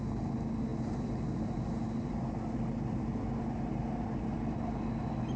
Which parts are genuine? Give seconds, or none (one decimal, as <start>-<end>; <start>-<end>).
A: 0.0-5.4